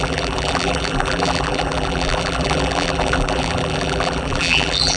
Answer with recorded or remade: remade